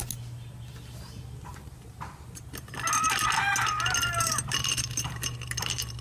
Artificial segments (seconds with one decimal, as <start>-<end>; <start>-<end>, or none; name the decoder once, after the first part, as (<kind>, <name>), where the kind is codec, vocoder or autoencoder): 1.5-2.7 (vocoder, BigVGAN v2); 4.0-6.0